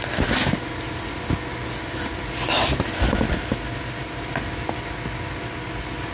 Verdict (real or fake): real